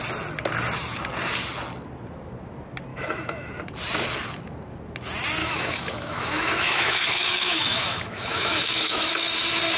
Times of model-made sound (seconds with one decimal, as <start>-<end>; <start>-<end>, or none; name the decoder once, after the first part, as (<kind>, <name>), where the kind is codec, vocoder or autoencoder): 2.9-3.5 (autoencoder, DAC-VAE); 5.4-9.1